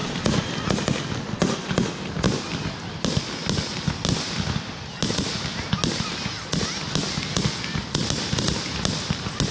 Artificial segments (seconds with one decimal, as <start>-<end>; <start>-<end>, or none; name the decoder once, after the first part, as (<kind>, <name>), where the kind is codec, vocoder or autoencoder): none